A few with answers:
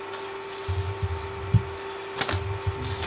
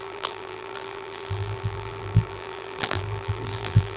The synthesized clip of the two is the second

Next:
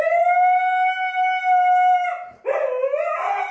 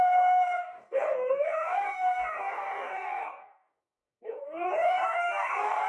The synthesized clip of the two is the second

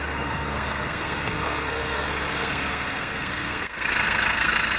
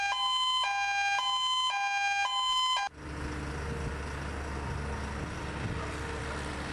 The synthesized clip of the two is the first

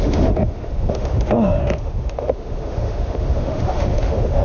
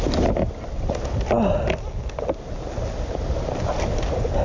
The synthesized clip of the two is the first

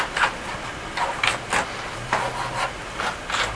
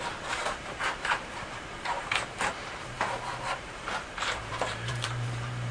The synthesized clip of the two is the second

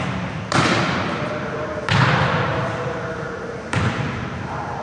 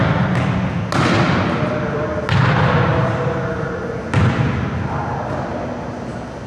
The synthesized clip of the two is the first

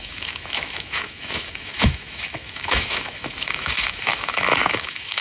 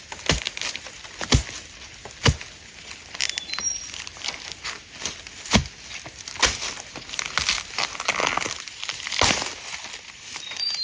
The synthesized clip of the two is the first